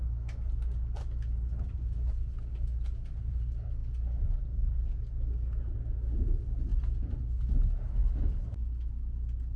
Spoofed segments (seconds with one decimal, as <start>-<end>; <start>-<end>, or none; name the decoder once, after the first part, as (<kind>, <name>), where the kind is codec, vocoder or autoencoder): none